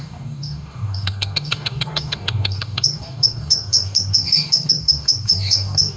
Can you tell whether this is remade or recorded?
remade